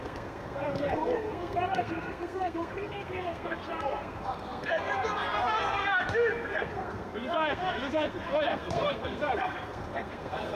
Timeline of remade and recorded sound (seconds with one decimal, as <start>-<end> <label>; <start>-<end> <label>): 0.0-10.6 remade